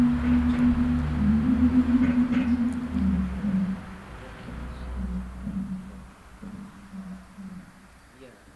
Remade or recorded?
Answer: recorded